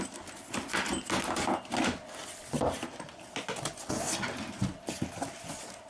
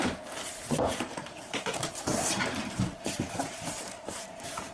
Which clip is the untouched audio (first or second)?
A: first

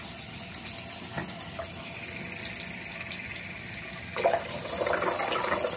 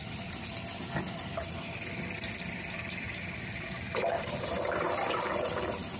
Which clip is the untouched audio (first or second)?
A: first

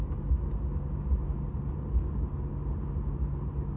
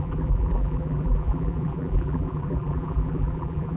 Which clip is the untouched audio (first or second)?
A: first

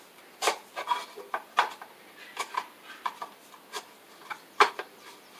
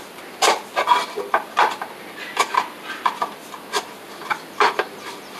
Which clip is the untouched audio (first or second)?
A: second